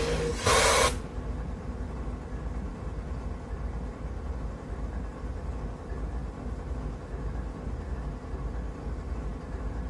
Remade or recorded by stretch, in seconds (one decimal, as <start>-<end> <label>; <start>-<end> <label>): 0.0-9.9 recorded